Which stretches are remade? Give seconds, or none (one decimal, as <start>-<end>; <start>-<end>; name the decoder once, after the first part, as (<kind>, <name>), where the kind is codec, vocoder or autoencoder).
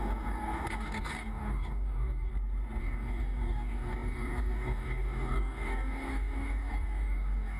0.0-2.3 (codec, DAC); 2.8-7.6